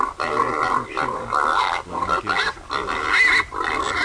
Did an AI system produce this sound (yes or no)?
no